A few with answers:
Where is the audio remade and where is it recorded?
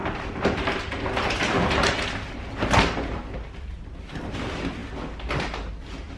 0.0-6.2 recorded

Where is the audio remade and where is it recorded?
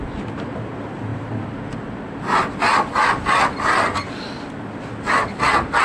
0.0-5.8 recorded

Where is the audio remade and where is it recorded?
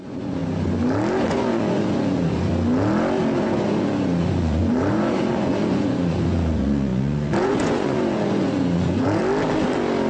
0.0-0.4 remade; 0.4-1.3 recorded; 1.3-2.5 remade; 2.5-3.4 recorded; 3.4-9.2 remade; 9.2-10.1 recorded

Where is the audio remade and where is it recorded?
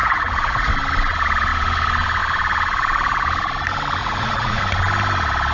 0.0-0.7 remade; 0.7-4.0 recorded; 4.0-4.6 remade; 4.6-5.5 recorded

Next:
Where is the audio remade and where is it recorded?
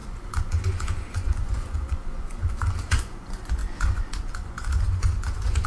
0.0-5.7 remade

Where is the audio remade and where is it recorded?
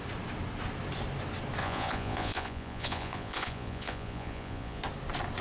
0.0-1.6 recorded; 1.6-4.8 remade; 4.8-5.4 recorded